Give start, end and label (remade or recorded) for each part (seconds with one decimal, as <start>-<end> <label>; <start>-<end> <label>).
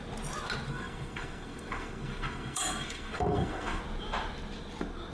0.0-0.7 recorded; 0.7-3.8 remade; 3.8-5.1 recorded